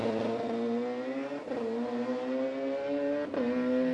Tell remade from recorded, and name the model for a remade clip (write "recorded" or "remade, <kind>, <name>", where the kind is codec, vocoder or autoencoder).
recorded